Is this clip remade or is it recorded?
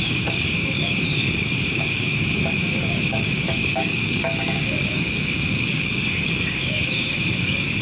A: remade